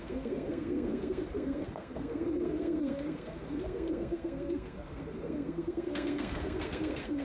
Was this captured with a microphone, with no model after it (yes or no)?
no